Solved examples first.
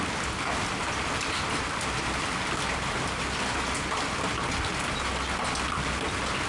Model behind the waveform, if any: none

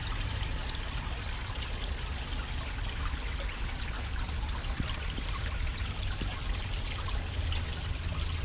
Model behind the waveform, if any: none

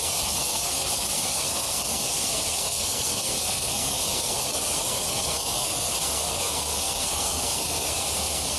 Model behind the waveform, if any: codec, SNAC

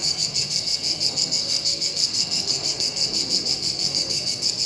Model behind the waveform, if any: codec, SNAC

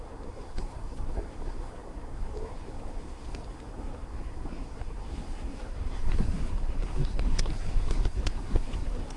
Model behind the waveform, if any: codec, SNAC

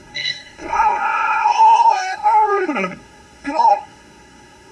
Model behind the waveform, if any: codec, SNAC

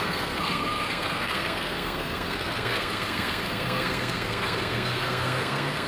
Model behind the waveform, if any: codec, SNAC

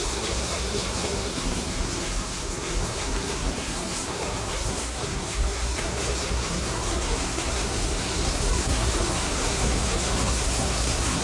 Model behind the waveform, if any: codec, SNAC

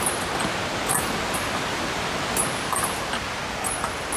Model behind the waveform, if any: none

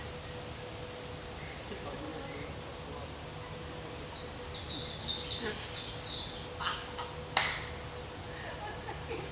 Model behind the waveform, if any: none